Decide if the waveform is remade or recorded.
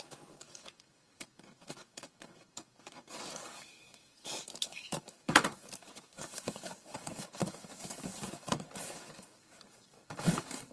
remade